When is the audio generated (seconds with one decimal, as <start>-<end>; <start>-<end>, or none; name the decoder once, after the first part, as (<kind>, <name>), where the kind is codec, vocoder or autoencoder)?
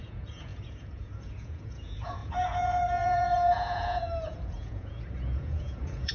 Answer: 0.0-6.1 (vocoder, Vocos)